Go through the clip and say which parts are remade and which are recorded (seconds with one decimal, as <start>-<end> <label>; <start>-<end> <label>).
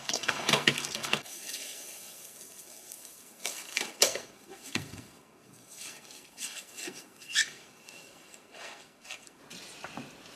0.0-9.4 remade; 9.4-10.4 recorded